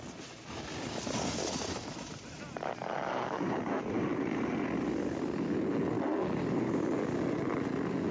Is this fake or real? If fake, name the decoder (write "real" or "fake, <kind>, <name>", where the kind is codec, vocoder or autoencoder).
real